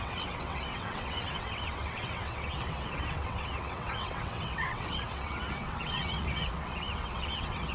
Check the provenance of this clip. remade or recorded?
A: remade